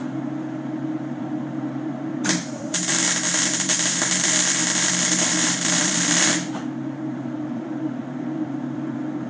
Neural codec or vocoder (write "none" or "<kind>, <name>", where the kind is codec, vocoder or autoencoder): vocoder, BigVGAN v2